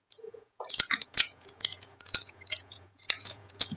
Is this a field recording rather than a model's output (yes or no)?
no